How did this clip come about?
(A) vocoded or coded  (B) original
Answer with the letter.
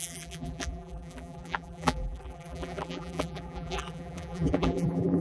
A